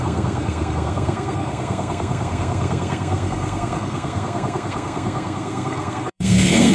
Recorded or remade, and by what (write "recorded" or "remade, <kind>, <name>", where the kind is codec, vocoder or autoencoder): remade, codec, SNAC